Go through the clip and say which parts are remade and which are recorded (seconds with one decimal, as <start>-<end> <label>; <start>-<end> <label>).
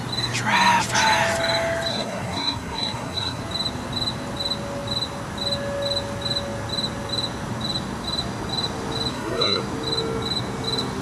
0.0-1.9 recorded; 1.9-3.4 remade; 3.4-9.1 recorded; 9.1-9.6 remade; 9.6-11.0 recorded